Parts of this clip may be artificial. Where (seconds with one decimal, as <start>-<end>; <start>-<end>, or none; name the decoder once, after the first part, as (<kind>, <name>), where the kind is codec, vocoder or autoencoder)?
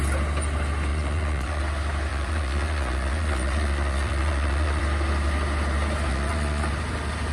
0.9-1.6 (vocoder, Vocos); 2.1-4.8; 6.1-6.7